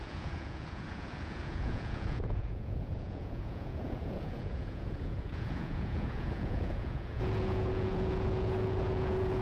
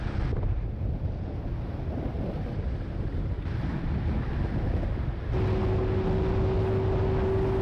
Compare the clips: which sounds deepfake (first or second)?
first